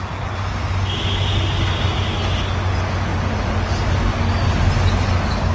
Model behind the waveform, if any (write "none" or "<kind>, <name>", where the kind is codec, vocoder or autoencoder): none